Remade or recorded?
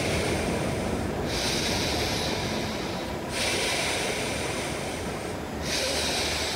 recorded